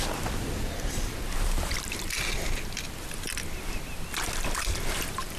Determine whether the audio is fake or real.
real